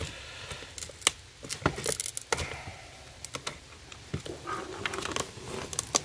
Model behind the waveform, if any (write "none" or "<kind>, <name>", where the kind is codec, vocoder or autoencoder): none